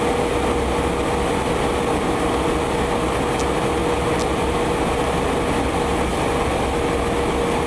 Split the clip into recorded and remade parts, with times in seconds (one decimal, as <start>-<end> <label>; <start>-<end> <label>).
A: 0.0-7.7 recorded